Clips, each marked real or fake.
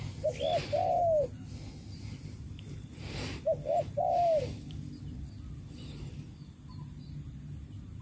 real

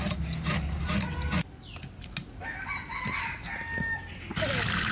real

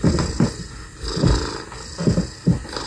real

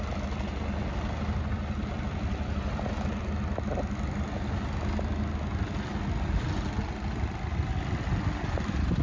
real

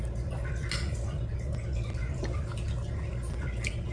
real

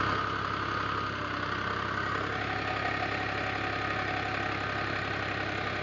real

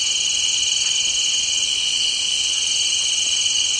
real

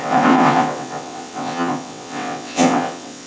fake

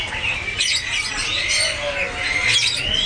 real